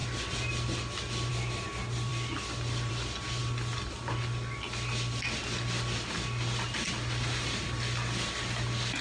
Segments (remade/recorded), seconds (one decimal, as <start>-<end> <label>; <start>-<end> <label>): 0.0-9.0 recorded

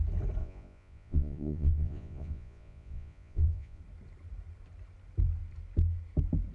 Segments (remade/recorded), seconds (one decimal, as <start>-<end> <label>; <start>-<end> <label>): 0.0-0.4 recorded; 0.4-3.8 remade; 3.8-6.5 recorded